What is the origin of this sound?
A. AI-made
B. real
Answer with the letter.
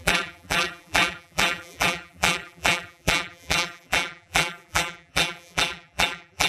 A